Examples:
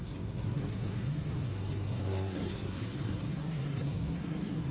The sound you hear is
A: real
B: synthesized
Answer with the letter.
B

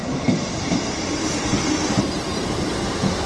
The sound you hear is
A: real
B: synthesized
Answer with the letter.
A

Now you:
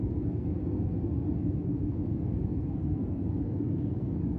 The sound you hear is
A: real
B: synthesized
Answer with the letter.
B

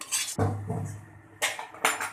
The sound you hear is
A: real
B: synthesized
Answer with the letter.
A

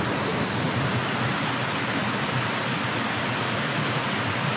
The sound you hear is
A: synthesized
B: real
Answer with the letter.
B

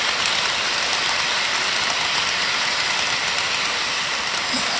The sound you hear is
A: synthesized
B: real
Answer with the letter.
B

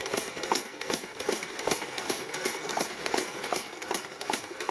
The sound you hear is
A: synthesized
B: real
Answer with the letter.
A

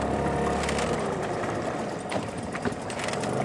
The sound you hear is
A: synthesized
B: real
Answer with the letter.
B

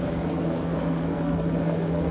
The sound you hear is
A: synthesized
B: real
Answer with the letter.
A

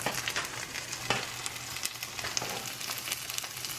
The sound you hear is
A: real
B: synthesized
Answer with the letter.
A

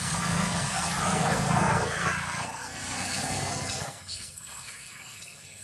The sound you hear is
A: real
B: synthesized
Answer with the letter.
B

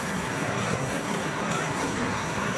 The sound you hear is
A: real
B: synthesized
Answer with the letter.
B